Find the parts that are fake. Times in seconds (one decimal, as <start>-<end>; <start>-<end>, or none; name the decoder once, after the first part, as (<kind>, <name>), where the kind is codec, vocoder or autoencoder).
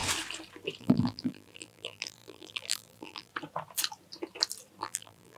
0.8-3.3 (vocoder, BigVGAN v2); 4.8-5.4